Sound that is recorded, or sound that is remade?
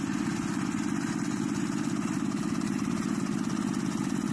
recorded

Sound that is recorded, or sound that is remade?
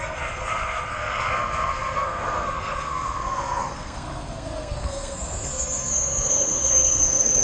remade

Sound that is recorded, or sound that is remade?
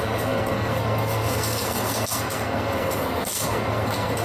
remade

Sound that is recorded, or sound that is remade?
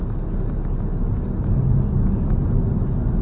recorded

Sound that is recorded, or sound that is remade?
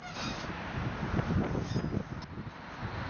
recorded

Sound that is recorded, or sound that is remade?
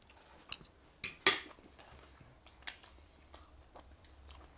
recorded